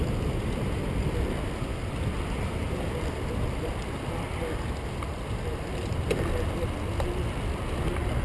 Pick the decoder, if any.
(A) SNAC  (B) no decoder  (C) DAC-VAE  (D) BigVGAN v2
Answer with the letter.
B